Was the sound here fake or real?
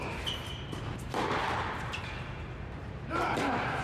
fake